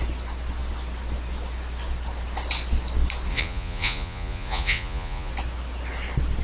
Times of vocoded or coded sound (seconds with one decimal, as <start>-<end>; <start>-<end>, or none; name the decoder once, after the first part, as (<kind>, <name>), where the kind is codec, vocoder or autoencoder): 3.3-5.3 (vocoder, Vocos)